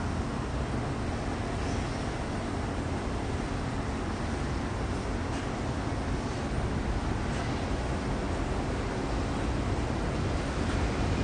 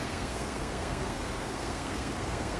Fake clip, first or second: second